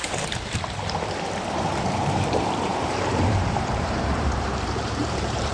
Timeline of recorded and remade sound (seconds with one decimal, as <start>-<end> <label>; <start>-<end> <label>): 0.0-1.9 recorded; 1.9-5.5 remade